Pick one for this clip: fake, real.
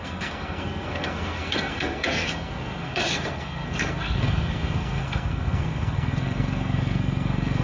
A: fake